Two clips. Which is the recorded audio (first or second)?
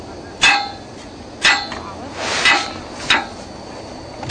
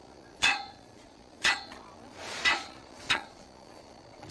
first